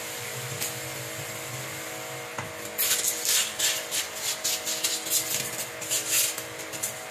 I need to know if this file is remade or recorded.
recorded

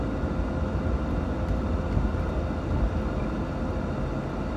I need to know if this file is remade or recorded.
recorded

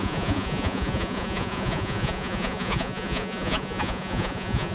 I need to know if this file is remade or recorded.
remade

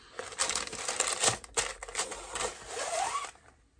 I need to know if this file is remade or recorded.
recorded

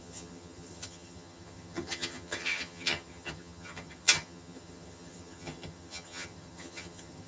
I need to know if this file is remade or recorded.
remade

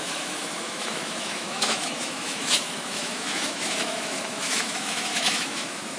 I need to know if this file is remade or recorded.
remade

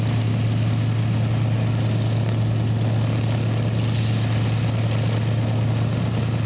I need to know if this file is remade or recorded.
recorded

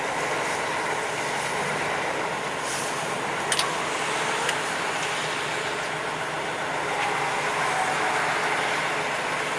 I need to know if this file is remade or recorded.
recorded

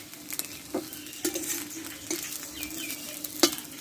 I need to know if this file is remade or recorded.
recorded